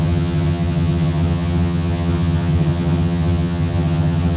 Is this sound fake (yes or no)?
yes